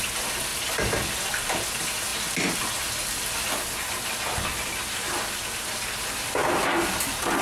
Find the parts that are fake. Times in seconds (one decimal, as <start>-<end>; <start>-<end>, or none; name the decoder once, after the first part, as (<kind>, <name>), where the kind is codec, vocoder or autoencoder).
none